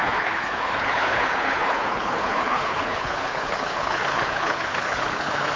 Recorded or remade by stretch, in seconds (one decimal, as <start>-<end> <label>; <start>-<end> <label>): 0.0-5.6 remade